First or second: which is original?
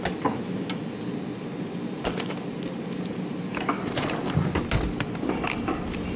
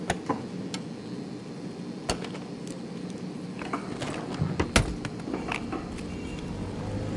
second